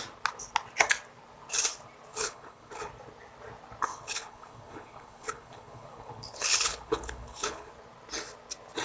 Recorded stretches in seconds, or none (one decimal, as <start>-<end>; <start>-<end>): 0.0-2.1; 2.9-3.9; 7.7-8.8